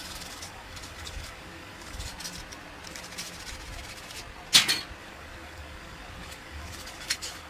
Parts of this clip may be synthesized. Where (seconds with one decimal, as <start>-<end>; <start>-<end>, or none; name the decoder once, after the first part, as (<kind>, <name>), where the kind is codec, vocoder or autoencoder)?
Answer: 0.0-2.1 (codec, DAC); 5.0-7.5